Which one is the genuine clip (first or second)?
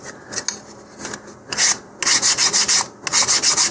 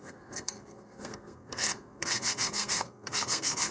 first